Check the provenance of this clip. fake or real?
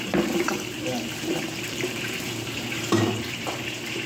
fake